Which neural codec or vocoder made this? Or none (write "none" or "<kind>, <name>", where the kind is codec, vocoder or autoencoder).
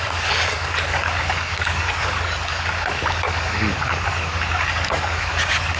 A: codec, DAC